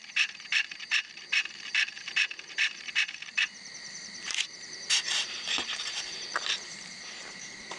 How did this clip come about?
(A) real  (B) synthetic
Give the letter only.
B